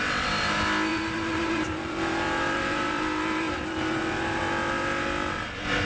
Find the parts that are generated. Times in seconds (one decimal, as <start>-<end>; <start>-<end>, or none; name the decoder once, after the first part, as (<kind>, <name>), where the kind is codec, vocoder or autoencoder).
0.9-4.4 (vocoder, BigVGAN v2)